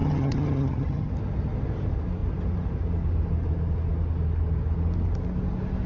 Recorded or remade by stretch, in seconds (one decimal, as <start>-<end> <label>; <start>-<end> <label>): 0.0-1.1 remade; 1.1-5.9 recorded